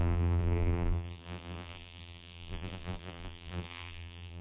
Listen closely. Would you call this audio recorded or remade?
remade